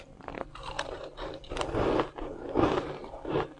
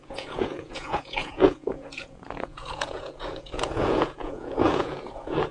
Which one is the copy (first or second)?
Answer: second